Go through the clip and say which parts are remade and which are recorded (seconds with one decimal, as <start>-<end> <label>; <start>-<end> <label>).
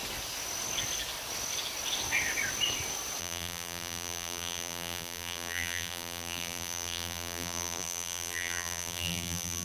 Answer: 0.0-3.2 recorded; 3.2-9.6 remade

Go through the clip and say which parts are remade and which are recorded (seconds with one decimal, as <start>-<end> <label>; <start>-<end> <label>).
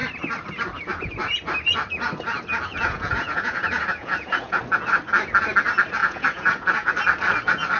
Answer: 0.0-2.7 recorded; 2.7-4.6 remade; 4.6-6.0 recorded; 6.0-6.9 remade; 6.9-7.8 recorded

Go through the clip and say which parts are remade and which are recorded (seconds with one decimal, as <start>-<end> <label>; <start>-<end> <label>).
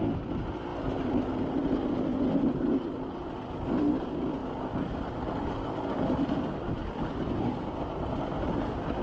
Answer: 0.0-9.0 recorded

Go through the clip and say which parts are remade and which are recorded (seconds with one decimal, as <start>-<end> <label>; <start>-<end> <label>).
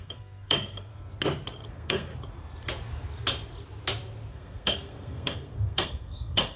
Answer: 0.0-0.9 remade; 0.9-1.7 recorded; 1.7-2.1 remade; 2.1-4.3 recorded; 4.3-6.6 remade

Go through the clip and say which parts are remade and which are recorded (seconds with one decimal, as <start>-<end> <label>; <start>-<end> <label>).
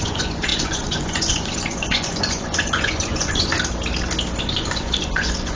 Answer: 0.0-3.5 remade; 3.5-4.4 recorded; 4.4-5.5 remade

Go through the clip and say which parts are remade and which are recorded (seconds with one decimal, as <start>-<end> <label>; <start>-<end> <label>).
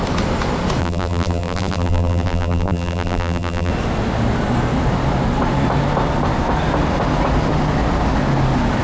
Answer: 0.0-0.8 recorded; 0.8-3.7 remade; 3.7-8.8 recorded